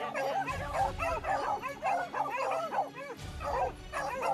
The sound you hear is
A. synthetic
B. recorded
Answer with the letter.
B